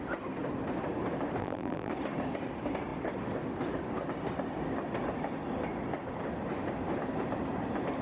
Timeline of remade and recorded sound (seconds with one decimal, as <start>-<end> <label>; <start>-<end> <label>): 0.0-1.4 recorded; 1.4-1.9 remade; 1.9-8.0 recorded